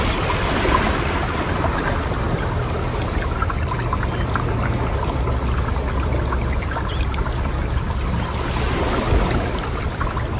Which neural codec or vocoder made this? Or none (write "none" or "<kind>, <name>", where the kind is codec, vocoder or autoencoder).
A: none